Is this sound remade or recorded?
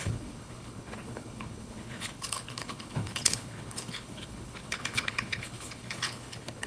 remade